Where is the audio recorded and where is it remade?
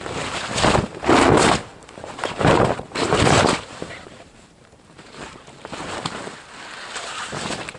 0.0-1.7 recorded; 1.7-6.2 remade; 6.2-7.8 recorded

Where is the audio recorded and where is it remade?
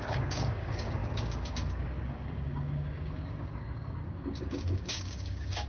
0.0-5.7 remade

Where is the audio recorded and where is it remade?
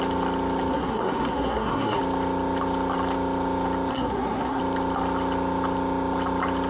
0.0-0.7 recorded; 0.7-2.0 remade; 2.0-3.9 recorded; 3.9-4.6 remade; 4.6-6.7 recorded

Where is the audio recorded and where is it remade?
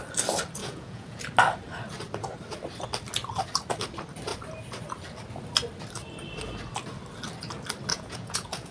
0.0-0.6 recorded; 0.6-1.2 remade; 1.2-7.9 recorded; 7.9-8.7 remade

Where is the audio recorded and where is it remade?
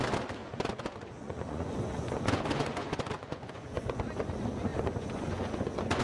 0.0-0.4 recorded; 0.4-4.0 remade; 4.0-4.7 recorded; 4.7-6.0 remade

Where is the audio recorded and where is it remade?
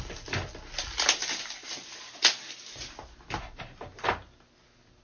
0.0-5.0 recorded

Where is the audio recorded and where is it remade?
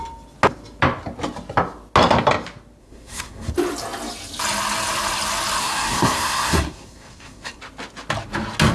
0.0-2.8 recorded; 2.8-3.5 remade; 3.5-5.6 recorded; 5.6-7.6 remade; 7.6-8.7 recorded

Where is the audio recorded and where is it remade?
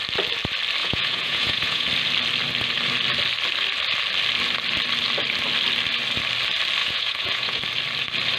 0.0-0.8 recorded; 0.8-1.9 remade; 1.9-6.8 recorded; 6.8-7.6 remade; 7.6-8.4 recorded